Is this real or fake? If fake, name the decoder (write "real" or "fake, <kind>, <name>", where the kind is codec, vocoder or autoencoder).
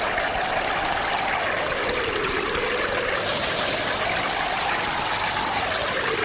real